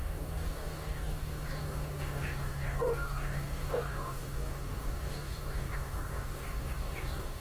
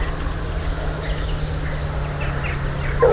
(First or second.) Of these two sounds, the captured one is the second